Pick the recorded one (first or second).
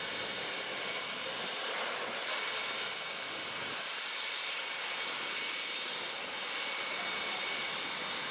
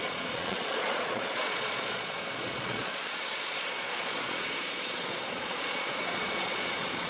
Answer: first